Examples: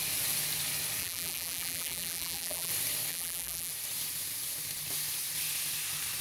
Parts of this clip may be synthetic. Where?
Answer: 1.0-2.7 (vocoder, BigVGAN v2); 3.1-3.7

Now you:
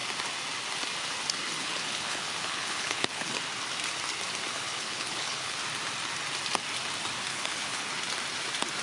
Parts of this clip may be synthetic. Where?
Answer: 1.6-3.3 (codec, HILCodec); 4.5-5.6; 7.3-7.9

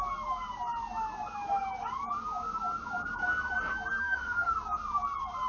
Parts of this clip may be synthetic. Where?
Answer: 4.0-4.5 (autoencoder, DAC-VAE)